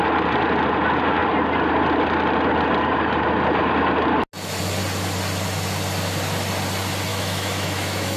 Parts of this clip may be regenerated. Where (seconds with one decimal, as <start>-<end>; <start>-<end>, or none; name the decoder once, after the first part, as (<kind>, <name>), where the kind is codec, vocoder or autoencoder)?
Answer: 7.1-8.2 (autoencoder, DAC-VAE)